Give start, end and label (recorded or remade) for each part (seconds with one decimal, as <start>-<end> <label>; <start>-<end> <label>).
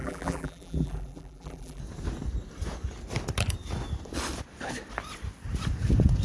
0.0-1.8 remade; 1.8-6.2 recorded